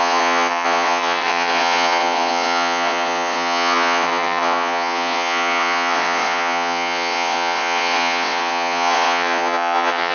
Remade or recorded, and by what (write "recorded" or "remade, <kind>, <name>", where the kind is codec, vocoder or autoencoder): remade, vocoder, WaveNeXt